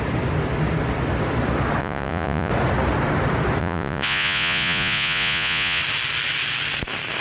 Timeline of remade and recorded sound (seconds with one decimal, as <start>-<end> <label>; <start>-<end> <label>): 0.0-1.8 recorded; 1.8-2.5 remade; 2.5-3.6 recorded; 3.6-5.8 remade; 5.8-7.2 recorded

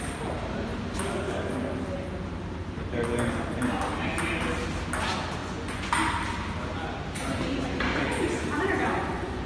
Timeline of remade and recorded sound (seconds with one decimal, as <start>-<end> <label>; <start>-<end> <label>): 0.0-5.4 recorded; 5.4-5.9 remade; 5.9-7.9 recorded; 7.9-9.5 remade